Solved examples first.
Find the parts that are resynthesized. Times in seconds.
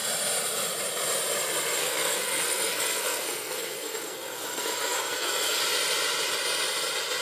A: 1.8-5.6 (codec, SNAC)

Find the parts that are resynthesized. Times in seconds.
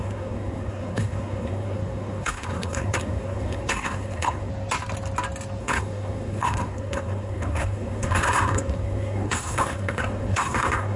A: 0.0-4.5 (codec, SNAC); 5.6-11.0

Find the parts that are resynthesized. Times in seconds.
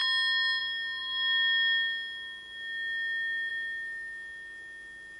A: none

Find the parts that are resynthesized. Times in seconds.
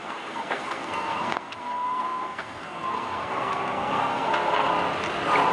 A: 0.0-4.7 (codec, SNAC)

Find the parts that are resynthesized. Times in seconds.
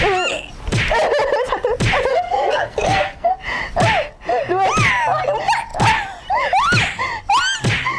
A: 2.1-3.3 (codec, SNAC)